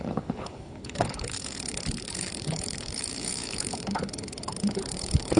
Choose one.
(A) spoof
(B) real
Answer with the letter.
A